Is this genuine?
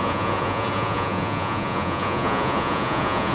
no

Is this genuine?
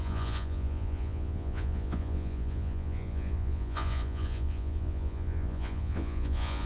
no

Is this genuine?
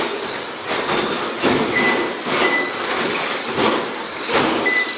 yes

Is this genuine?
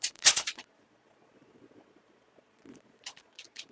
no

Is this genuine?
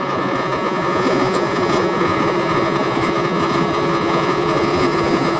no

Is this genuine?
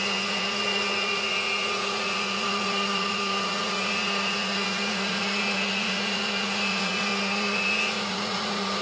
no